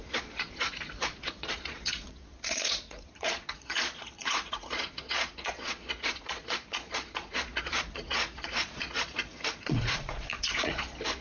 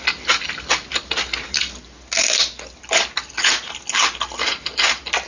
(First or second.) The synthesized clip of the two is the first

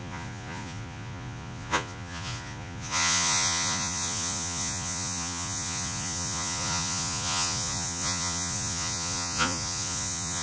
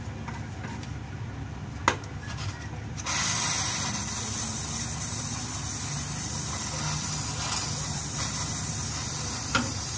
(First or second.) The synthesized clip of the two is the first